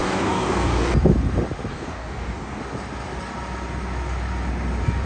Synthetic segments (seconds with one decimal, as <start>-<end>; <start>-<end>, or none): 0.0-0.9; 1.7-2.6